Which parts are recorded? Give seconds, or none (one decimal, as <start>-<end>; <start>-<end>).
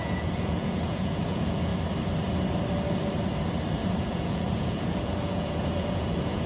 1.7-4.0